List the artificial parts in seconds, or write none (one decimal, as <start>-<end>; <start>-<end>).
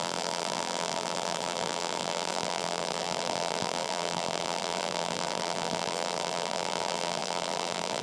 0.0-8.0